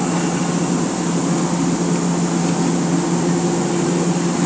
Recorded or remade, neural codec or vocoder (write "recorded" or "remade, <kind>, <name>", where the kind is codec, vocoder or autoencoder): recorded